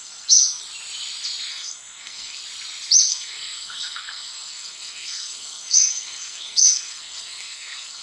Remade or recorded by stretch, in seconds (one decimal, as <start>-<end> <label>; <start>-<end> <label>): 0.0-0.6 remade; 0.6-1.5 recorded; 1.5-2.4 remade; 2.4-3.1 recorded; 3.1-8.0 remade